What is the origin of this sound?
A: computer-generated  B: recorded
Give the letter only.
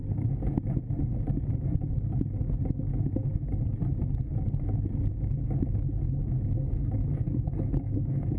B